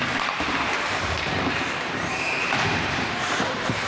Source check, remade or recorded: remade